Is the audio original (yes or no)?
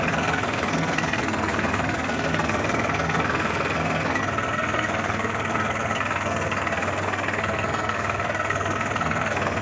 no